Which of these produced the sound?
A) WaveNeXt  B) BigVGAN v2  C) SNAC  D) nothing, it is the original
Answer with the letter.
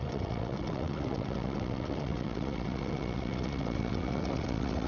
A